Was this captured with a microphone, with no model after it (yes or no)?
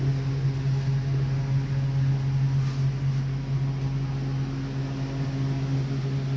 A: yes